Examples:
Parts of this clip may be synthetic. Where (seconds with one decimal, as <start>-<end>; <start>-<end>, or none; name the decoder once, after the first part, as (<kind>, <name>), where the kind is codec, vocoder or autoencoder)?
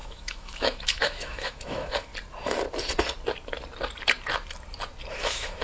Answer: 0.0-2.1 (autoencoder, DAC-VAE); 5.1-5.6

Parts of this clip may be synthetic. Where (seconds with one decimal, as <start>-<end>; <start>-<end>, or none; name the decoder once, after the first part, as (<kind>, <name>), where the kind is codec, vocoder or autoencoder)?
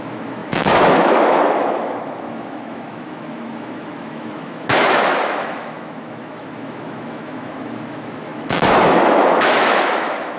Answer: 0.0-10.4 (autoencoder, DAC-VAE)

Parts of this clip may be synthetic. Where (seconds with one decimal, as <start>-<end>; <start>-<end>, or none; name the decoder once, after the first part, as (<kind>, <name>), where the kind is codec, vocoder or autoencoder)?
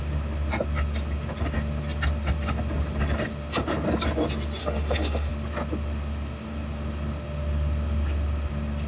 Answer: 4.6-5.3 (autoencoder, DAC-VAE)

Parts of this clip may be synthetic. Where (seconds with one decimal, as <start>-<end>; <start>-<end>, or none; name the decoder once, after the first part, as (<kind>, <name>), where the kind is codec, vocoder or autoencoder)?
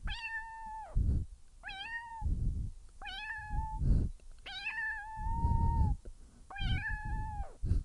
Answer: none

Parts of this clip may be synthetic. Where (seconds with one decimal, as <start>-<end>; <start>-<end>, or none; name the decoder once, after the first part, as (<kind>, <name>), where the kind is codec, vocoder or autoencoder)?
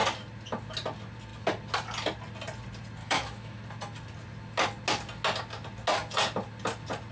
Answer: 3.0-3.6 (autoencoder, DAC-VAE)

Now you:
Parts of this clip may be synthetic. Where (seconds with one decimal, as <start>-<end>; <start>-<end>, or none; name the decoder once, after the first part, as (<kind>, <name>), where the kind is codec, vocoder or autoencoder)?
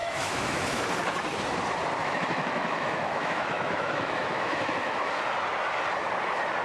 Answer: 0.0-0.8 (autoencoder, DAC-VAE); 2.0-5.2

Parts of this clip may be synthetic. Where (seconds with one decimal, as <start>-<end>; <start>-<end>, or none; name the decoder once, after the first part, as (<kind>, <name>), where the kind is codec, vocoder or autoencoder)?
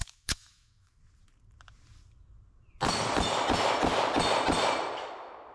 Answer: 0.0-1.0 (autoencoder, DAC-VAE)